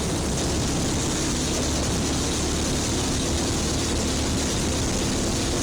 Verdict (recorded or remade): recorded